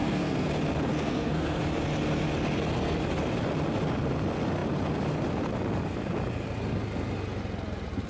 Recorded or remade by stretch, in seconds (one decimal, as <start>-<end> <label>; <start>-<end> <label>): 0.0-0.5 remade; 0.5-0.9 recorded; 0.9-1.6 remade; 1.6-8.1 recorded